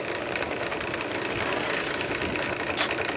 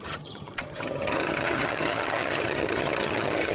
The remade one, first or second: second